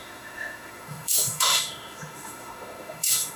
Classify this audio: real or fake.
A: fake